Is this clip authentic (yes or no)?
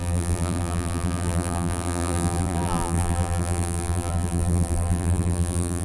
no